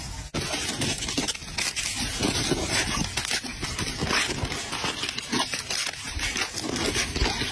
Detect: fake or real real